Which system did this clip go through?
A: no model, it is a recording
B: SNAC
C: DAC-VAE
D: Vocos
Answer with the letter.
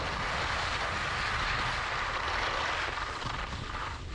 A